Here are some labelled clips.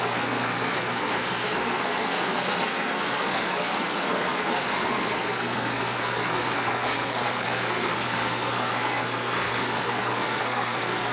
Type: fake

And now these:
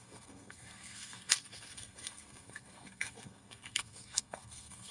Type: fake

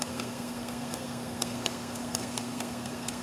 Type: fake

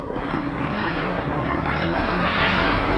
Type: fake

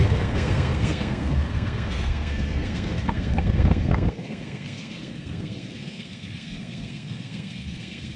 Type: fake